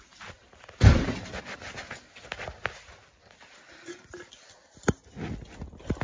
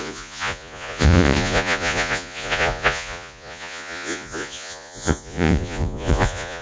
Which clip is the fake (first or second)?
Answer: second